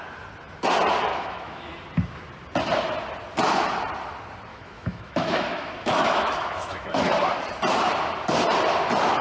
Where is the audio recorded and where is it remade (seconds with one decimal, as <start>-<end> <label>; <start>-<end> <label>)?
0.0-1.1 recorded; 1.1-1.7 remade; 1.7-4.5 recorded; 4.5-7.1 remade; 7.1-9.2 recorded